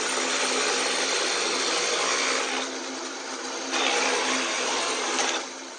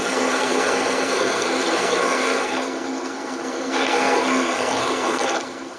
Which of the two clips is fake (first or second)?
second